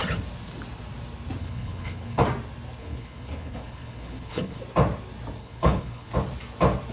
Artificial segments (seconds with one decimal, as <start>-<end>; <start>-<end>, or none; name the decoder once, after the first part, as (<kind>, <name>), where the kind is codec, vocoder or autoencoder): 1.4-2.2 (codec, HILCodec); 2.8-4.6; 5.4-6.1